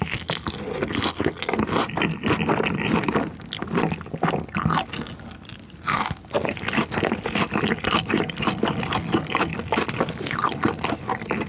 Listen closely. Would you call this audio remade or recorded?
recorded